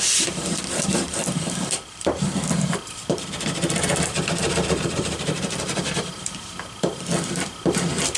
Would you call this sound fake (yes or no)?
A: yes